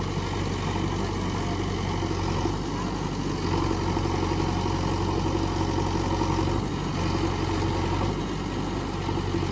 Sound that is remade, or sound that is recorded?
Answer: recorded